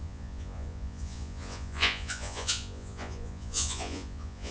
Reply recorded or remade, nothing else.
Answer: remade